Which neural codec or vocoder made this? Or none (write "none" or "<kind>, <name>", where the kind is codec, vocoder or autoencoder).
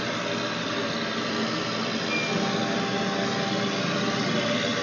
none